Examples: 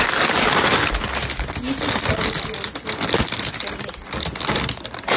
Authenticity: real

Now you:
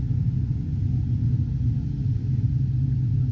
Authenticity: real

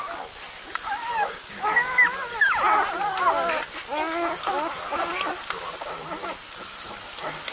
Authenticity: real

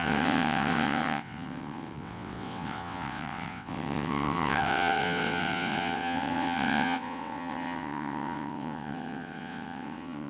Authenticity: fake